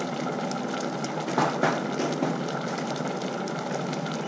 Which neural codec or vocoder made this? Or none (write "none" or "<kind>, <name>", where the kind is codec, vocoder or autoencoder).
none